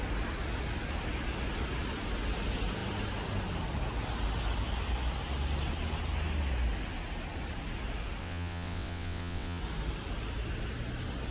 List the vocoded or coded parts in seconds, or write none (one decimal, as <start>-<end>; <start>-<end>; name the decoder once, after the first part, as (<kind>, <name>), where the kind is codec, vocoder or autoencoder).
8.2-9.6 (vocoder, WaveNeXt)